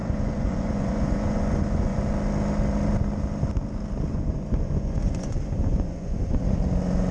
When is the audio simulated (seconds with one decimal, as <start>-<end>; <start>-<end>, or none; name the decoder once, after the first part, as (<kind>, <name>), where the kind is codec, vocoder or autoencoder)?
0.0-2.0 (vocoder, Vocos); 4.1-6.4